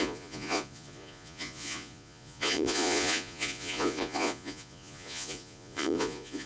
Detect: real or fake fake